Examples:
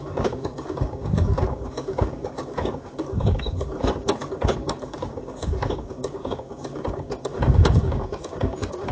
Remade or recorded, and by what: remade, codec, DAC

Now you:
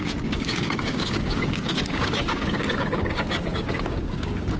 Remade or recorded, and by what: remade, codec, DAC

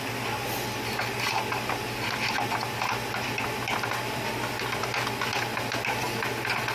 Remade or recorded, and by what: recorded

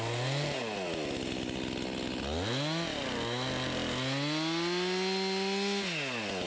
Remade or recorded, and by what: recorded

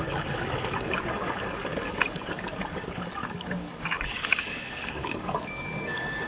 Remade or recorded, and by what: remade, codec, DAC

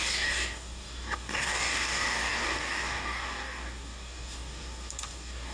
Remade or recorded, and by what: remade, codec, DAC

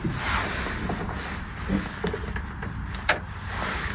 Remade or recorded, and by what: recorded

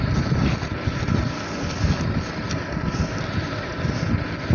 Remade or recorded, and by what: recorded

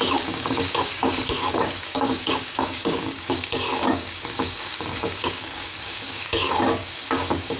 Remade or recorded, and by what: remade, codec, DAC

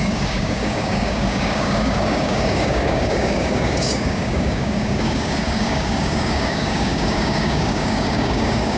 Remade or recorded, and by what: remade, codec, DAC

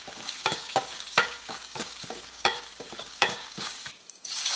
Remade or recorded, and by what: remade, codec, DAC